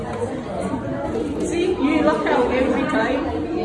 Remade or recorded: recorded